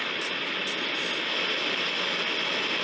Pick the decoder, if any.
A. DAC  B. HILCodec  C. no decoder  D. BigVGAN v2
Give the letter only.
C